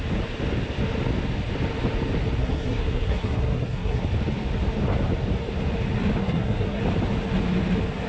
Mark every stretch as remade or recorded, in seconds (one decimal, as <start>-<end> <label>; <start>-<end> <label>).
0.0-2.4 recorded; 2.4-4.0 remade; 4.0-6.2 recorded; 6.2-6.8 remade; 6.8-8.1 recorded